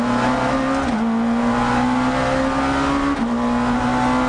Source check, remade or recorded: recorded